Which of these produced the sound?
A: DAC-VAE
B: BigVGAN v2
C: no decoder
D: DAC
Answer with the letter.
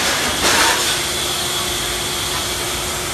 C